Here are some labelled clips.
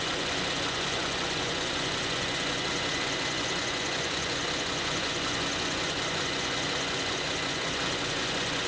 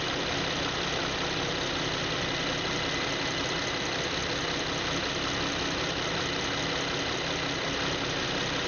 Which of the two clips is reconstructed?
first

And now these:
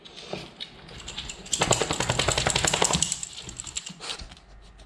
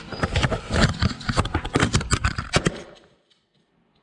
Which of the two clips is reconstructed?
second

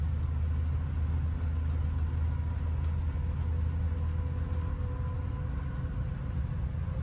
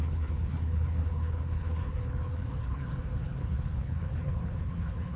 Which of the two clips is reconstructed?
second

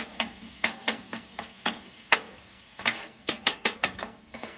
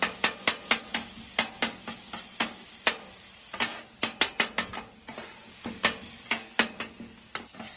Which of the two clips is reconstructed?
first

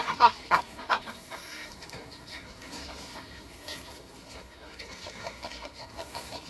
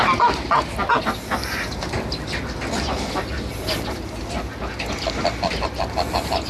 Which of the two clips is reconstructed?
first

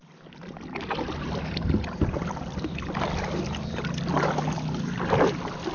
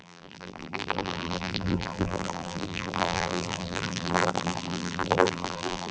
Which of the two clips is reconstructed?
second